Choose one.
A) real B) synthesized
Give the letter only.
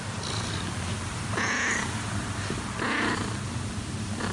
A